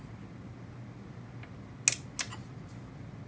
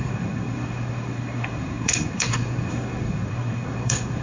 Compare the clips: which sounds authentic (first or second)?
first